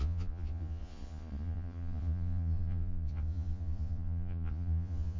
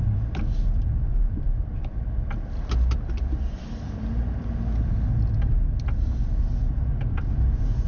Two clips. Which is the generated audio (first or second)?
first